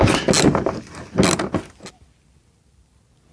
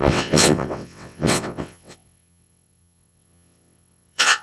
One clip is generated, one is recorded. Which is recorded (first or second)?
first